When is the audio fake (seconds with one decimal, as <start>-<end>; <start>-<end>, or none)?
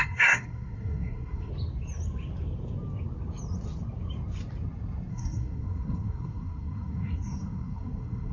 0.0-1.5; 5.1-8.3